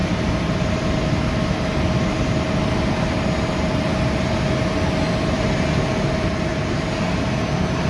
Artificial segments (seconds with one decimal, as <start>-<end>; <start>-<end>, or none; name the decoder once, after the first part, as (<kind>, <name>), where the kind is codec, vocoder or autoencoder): 0.0-0.7 (vocoder, BigVGAN v2)